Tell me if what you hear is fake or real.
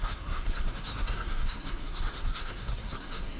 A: fake